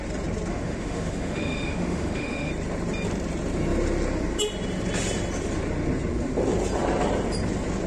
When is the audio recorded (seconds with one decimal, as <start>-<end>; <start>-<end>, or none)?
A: 0.0-0.5; 2.5-7.9